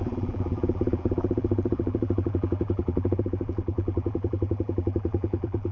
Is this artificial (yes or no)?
yes